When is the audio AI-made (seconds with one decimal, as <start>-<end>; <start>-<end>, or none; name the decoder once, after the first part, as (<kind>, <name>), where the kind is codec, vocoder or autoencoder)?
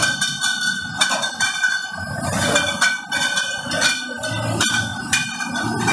none